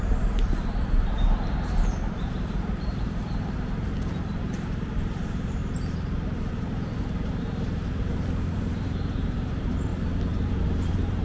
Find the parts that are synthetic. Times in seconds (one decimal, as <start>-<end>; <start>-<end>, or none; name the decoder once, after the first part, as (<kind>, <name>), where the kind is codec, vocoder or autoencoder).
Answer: 0.0-5.6 (vocoder, BigVGAN v2); 6.5-9.9; 10.5-11.2